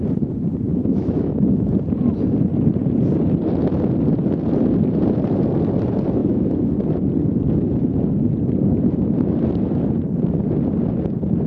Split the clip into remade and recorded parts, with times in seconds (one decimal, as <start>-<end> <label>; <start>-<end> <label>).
0.0-0.7 recorded; 0.7-1.7 remade; 1.7-6.2 recorded; 6.2-6.8 remade; 6.8-11.5 recorded